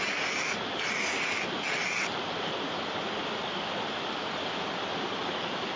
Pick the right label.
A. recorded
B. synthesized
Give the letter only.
A